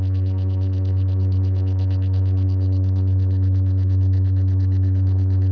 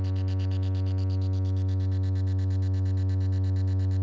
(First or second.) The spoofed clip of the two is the first